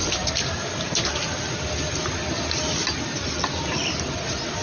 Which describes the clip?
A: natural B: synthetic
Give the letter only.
A